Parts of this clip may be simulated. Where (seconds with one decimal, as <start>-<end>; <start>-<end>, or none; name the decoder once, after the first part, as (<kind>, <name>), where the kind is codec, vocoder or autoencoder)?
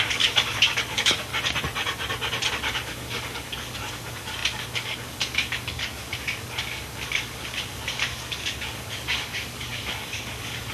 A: 0.0-1.3 (codec, DAC); 2.5-10.7